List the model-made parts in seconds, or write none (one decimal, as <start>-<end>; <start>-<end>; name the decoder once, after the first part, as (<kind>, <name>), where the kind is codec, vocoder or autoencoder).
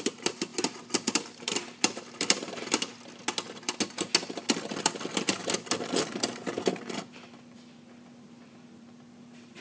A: 0.0-2.9 (vocoder, BigVGAN v2); 4.7-9.6